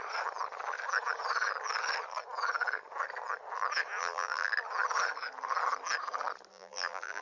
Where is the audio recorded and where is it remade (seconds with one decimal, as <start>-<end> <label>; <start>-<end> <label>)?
0.0-4.0 recorded; 4.0-4.5 remade; 4.5-6.5 recorded; 6.5-7.2 remade